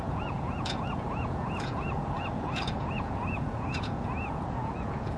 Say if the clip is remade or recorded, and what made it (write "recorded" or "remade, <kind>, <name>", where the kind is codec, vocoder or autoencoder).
remade, vocoder, Vocos